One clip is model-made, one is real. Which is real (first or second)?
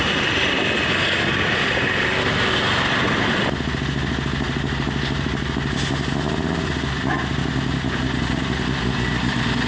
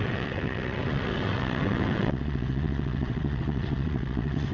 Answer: first